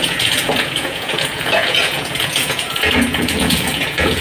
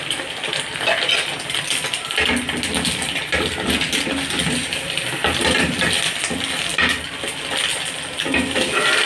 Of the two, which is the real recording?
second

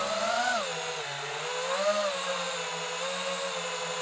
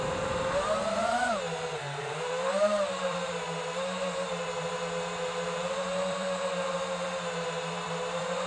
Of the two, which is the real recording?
first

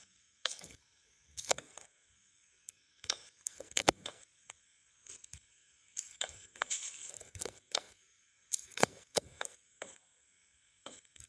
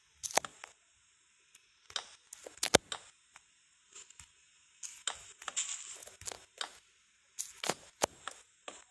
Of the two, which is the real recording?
second